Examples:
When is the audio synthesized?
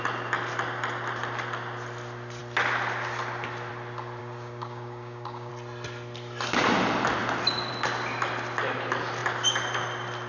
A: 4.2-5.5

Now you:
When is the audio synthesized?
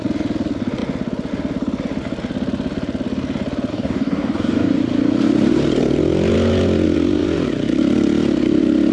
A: 3.7-4.8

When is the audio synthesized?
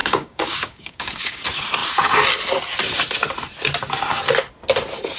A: 0.0-1.4